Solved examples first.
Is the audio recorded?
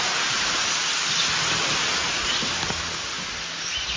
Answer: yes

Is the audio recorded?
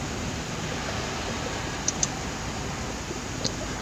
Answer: yes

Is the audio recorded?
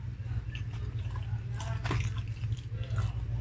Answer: yes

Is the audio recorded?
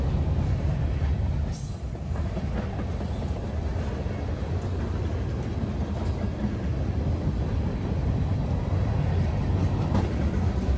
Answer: yes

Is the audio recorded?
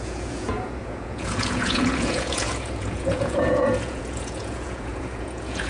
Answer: no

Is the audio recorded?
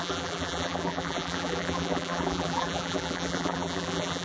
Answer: no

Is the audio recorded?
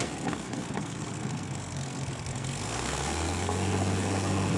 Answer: no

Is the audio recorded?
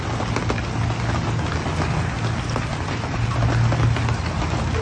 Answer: yes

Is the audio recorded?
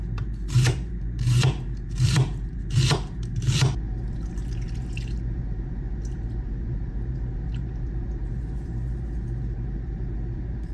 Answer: no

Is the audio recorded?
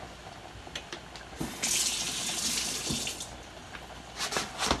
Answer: yes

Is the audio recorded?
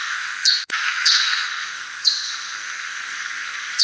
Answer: no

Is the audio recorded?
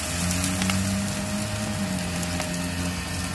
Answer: yes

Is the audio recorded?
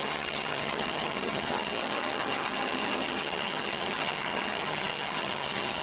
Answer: no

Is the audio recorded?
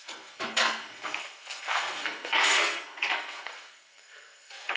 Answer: no